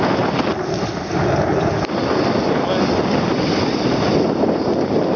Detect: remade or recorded recorded